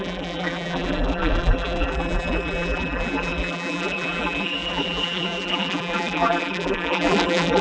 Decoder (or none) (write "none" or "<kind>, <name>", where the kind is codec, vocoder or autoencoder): vocoder, BigVGAN v2